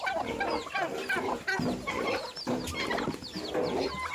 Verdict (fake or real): real